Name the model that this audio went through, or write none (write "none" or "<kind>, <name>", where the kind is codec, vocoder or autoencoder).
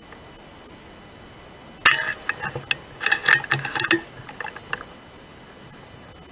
none